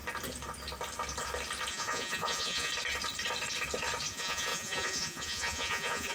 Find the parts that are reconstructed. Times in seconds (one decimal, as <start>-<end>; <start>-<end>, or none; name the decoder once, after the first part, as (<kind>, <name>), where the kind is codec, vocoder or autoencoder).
1.7-2.7 (vocoder, Vocos); 4.1-6.1